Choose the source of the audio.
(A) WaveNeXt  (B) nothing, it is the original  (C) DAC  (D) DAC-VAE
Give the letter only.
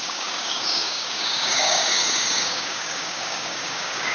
C